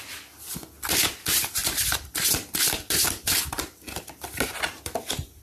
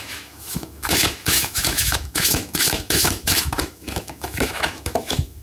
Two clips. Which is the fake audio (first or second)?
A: second